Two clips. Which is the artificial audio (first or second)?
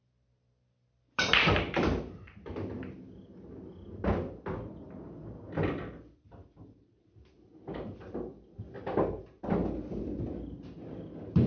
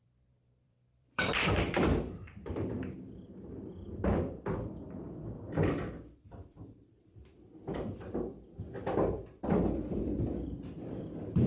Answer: second